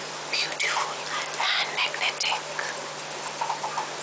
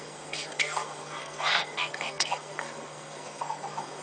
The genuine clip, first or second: first